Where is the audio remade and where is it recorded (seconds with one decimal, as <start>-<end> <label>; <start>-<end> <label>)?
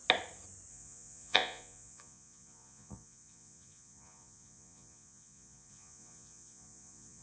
0.0-0.7 recorded; 0.7-7.2 remade